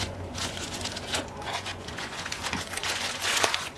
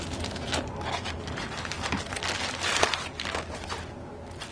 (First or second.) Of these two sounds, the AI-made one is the first